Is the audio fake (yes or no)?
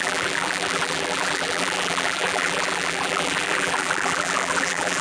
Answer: yes